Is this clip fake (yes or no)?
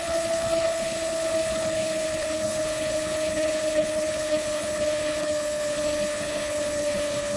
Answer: yes